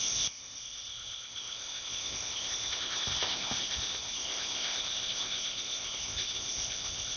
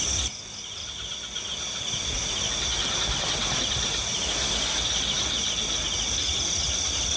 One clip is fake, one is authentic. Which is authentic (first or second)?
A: second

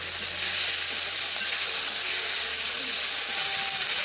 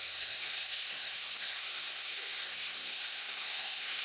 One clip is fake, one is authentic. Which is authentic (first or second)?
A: first